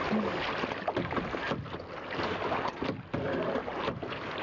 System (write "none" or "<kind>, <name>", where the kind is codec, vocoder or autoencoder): none